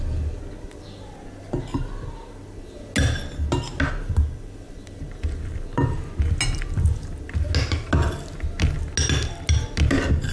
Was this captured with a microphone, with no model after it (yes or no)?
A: yes